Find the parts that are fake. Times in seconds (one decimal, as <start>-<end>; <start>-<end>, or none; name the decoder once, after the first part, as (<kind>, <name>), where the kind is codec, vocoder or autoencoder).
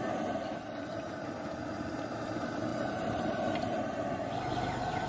2.7-3.8 (vocoder, BigVGAN v2)